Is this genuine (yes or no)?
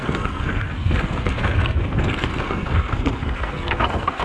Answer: no